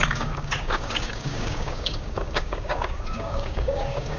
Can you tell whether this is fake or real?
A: fake